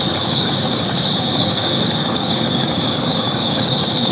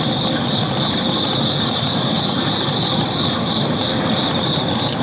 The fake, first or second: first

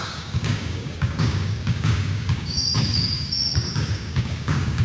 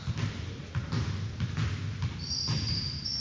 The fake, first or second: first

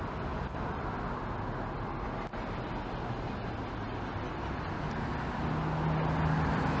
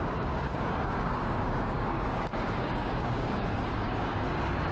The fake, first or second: second